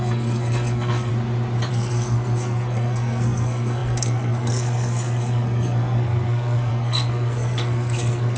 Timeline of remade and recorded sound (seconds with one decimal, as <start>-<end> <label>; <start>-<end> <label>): 0.0-1.1 remade; 1.1-1.7 recorded; 1.7-8.4 remade